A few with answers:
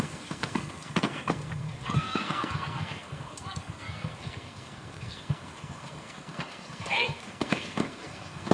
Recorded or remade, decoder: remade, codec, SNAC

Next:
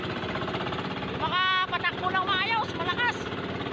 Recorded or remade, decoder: recorded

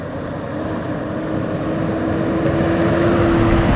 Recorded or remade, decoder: recorded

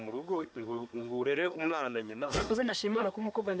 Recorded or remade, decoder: remade, codec, SNAC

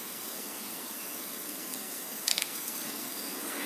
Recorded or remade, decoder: remade, codec, SNAC